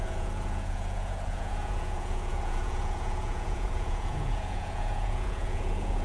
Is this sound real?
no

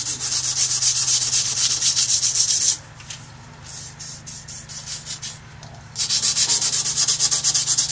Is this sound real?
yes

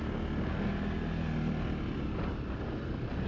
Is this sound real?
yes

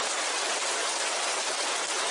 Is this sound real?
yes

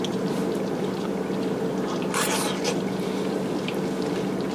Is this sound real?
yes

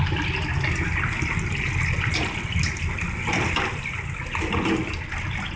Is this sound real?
yes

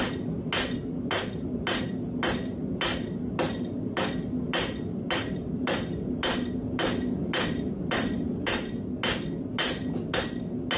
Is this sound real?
yes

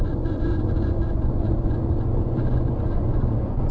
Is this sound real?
no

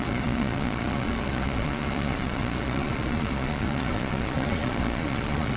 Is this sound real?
no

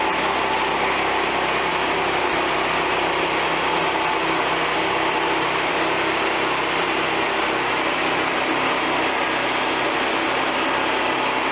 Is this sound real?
yes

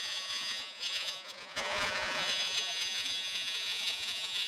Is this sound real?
no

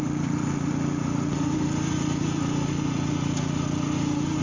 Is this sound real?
yes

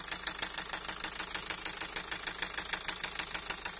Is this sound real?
yes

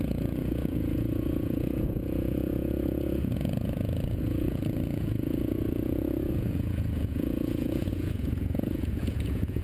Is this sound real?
no